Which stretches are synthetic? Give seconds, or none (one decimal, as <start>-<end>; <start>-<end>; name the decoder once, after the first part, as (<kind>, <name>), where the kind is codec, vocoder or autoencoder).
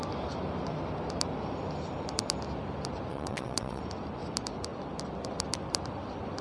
3.1-3.8 (vocoder, WaveNeXt)